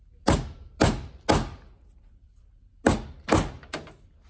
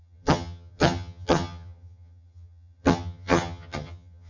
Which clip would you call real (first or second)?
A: first